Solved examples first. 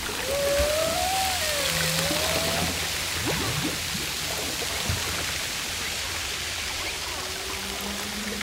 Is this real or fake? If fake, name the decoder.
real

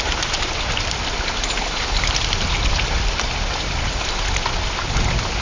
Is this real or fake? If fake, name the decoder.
real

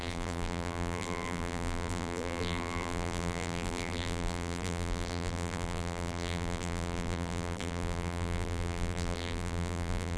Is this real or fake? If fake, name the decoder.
fake, vocoder, BigVGAN v2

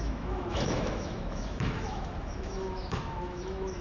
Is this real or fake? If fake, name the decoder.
fake, autoencoder, DAC-VAE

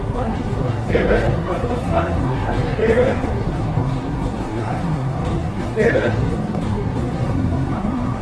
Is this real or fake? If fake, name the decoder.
fake, codec, SNAC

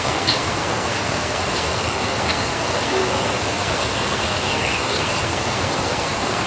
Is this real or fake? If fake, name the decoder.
fake, codec, SNAC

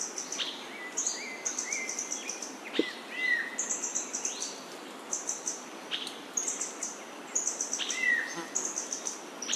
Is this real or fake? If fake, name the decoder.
real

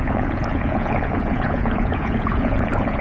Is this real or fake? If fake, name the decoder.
fake, vocoder, Vocos